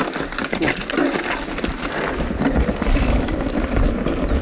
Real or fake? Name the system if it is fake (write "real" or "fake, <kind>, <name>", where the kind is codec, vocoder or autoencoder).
real